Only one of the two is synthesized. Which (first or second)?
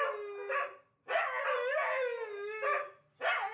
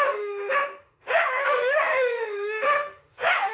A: second